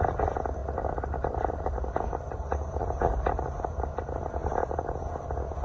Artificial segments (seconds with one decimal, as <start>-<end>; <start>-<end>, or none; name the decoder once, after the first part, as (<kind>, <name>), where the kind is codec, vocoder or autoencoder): 0.6-3.8 (vocoder, BigVGAN v2)